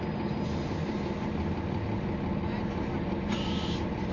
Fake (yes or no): no